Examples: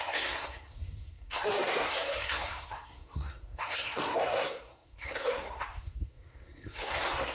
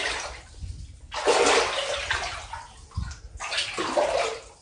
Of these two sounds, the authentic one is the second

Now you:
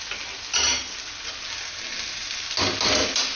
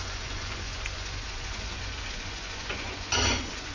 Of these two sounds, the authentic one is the first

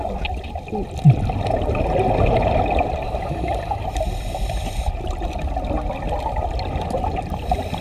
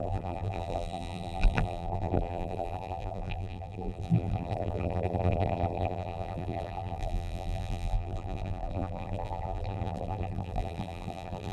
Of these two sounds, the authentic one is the first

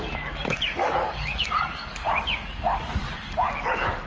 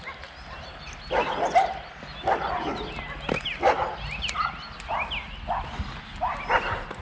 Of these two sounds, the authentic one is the second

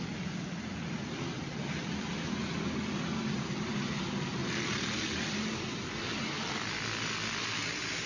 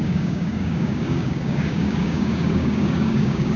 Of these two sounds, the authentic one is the first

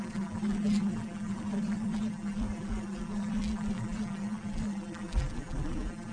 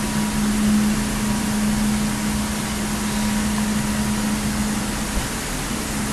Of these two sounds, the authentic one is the second